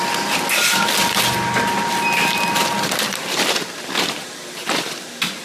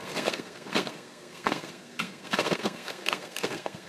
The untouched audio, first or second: first